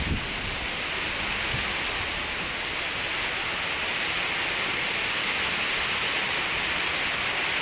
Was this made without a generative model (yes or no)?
yes